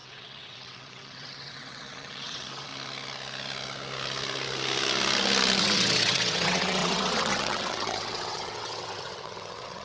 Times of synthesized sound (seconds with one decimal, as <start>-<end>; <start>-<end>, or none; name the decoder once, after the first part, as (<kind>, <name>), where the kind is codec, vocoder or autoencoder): 0.0-2.7 (vocoder, WaveNeXt); 5.6-9.8